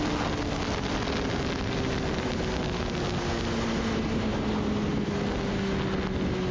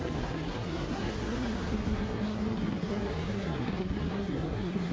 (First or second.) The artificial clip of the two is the second